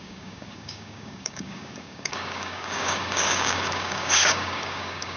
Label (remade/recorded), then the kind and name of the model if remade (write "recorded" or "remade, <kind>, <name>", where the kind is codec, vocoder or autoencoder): remade, codec, DAC